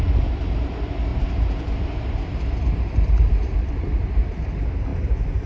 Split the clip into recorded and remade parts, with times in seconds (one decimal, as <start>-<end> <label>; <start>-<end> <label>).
0.0-1.1 recorded; 1.1-4.4 remade; 4.4-5.5 recorded